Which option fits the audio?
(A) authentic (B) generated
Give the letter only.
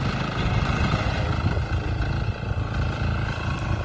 A